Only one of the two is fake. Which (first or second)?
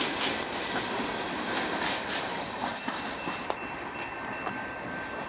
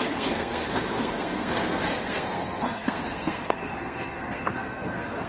second